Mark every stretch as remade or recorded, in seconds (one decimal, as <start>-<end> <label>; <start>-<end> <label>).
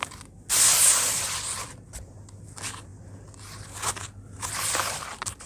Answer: 0.0-0.8 recorded; 0.8-1.7 remade; 1.7-5.5 recorded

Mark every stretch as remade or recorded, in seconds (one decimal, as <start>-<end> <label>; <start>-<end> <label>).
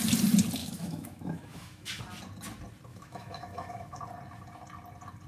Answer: 0.0-0.6 recorded; 0.6-2.0 remade; 2.0-2.9 recorded; 2.9-4.0 remade; 4.0-5.3 recorded